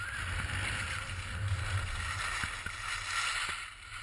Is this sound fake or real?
real